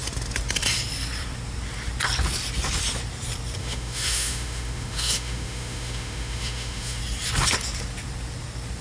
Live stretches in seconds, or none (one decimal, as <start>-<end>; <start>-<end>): 0.0-3.6; 7.0-8.8